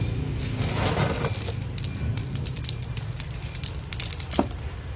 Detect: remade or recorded recorded